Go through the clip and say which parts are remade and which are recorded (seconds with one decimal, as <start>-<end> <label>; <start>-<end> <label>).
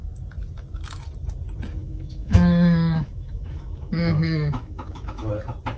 0.0-1.8 recorded; 1.8-5.3 remade; 5.3-5.8 recorded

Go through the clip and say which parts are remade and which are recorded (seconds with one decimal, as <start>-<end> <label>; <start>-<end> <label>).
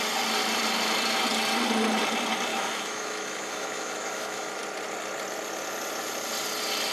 0.0-2.5 recorded; 2.5-4.6 remade; 4.6-6.9 recorded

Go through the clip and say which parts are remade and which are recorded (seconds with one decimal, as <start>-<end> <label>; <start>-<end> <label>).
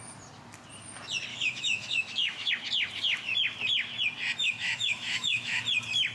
0.0-1.3 recorded; 1.3-2.5 remade; 2.5-4.4 recorded; 4.4-5.6 remade; 5.6-6.1 recorded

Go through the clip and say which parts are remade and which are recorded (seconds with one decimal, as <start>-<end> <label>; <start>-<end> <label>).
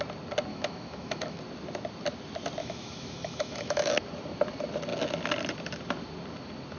0.0-0.5 recorded; 0.5-1.4 remade; 1.4-2.6 recorded; 2.6-3.9 remade; 3.9-6.8 recorded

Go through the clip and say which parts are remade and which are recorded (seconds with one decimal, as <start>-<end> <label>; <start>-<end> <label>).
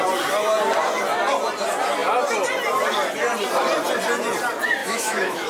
0.0-4.8 recorded; 4.8-5.5 remade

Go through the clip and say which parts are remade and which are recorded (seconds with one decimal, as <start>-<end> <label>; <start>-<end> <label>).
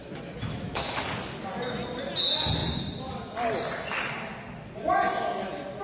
0.0-1.0 remade; 1.0-5.8 recorded